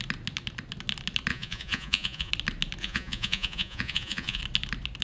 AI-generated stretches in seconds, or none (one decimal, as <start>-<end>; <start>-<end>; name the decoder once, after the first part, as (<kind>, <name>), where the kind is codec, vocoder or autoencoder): 1.3-2.3 (vocoder, Vocos); 2.8-4.4

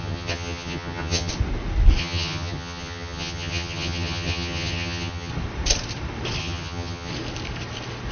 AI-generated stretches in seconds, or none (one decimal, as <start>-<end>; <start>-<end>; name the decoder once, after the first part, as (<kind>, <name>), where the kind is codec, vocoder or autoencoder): 0.0-1.3 (vocoder, HiFi-GAN); 2.0-5.3; 6.4-7.1

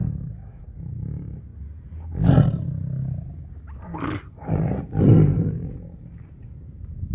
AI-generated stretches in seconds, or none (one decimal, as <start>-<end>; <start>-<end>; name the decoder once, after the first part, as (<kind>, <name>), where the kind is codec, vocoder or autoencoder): 0.0-0.6 (autoencoder, DAC-VAE)

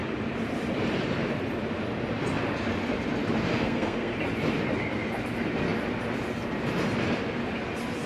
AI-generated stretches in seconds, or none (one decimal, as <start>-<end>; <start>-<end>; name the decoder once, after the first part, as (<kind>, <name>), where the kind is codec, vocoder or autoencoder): 3.5-4.1 (codec, SNAC)